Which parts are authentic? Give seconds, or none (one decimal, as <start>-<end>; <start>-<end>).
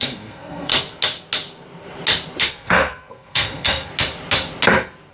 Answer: 0.7-2.5; 3.9-5.1